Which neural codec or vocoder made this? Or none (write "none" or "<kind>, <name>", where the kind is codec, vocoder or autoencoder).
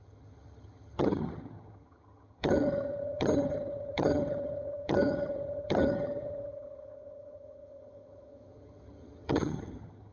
vocoder, HiFi-GAN